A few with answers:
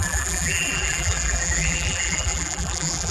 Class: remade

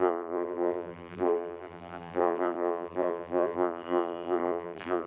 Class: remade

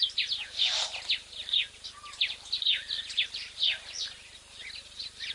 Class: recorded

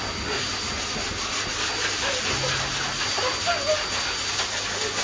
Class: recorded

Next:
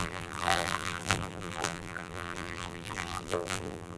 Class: remade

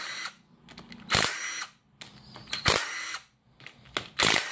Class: recorded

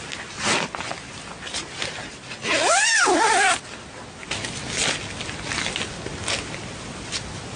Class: recorded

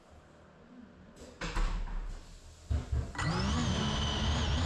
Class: recorded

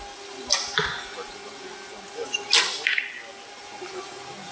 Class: recorded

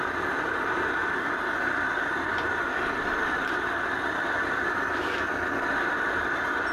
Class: remade